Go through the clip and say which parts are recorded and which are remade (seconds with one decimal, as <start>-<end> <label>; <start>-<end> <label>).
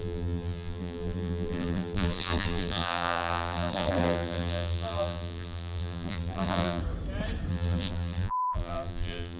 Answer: 0.0-6.8 remade; 6.8-7.5 recorded; 7.5-9.4 remade